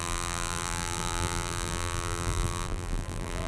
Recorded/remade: remade